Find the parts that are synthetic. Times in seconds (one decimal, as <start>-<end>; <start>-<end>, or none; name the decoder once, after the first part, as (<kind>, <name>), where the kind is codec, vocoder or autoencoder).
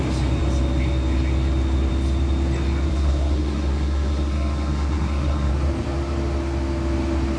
2.9-5.5 (codec, SNAC)